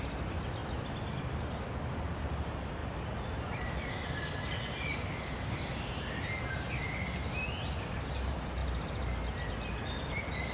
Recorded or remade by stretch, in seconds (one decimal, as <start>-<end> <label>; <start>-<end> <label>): 0.0-10.5 recorded